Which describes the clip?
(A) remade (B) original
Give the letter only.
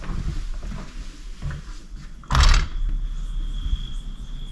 B